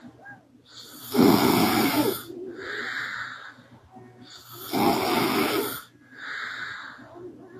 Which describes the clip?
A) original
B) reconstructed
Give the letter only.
A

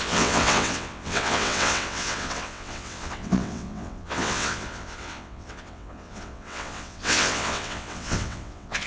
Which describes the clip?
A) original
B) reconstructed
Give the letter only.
B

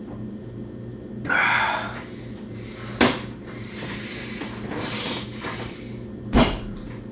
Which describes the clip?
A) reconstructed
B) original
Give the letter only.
A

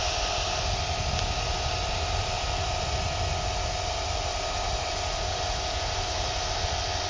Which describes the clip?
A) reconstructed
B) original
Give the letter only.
B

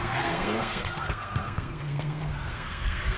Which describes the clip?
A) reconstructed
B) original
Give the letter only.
A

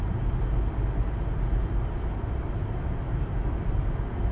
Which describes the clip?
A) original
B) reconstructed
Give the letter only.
A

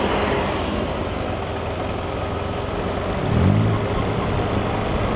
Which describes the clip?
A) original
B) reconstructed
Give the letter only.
A